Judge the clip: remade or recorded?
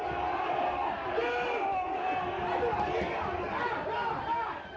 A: recorded